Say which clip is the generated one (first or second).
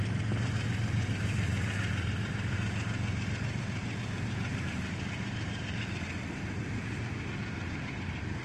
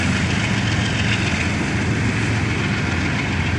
first